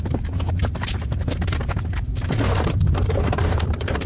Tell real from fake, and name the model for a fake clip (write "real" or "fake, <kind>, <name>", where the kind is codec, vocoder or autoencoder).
fake, vocoder, BigVGAN v2